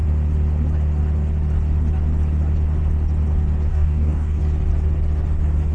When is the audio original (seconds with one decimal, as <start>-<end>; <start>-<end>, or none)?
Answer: 0.0-3.7; 4.4-5.7